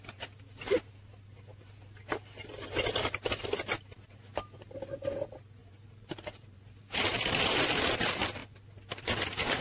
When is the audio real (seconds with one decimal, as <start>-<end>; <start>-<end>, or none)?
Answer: 0.0-2.2; 3.5-5.6; 7.6-9.6